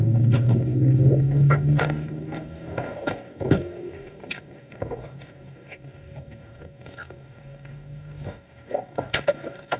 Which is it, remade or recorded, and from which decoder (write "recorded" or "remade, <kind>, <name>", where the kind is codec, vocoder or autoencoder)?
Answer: remade, codec, DAC